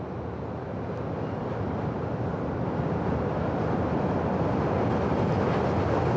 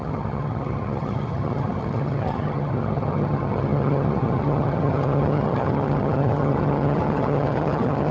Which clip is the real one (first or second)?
first